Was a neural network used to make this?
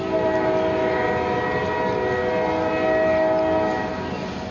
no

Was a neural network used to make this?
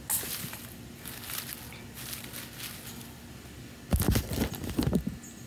no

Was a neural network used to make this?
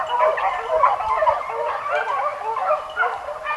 no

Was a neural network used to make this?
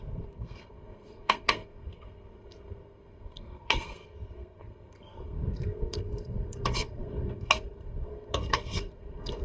yes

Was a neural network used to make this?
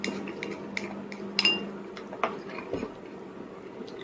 no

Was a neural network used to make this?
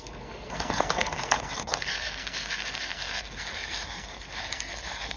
yes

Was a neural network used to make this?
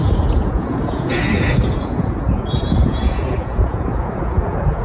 yes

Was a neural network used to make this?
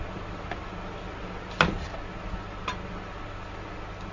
no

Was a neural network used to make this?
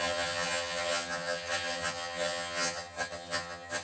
yes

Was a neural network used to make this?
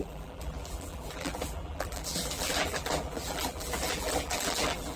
yes